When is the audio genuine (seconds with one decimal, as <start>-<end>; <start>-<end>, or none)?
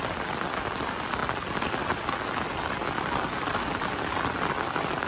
0.0-5.1